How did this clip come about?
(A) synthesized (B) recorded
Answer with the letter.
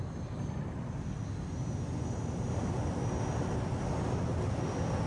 B